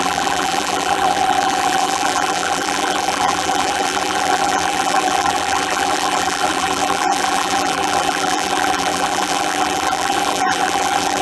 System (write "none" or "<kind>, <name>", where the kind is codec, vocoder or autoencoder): vocoder, BigVGAN v2